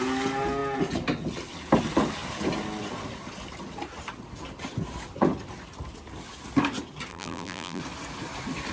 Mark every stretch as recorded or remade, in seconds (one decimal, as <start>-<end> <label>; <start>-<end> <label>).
0.0-7.1 recorded; 7.1-7.8 remade; 7.8-8.7 recorded